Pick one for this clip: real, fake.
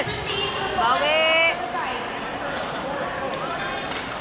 real